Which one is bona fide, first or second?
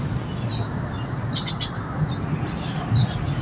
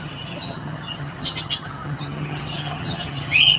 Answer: first